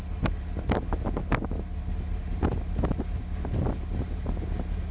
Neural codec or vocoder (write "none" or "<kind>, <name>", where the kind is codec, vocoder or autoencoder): none